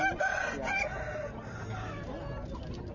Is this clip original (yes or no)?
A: yes